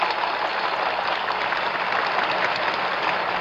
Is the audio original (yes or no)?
yes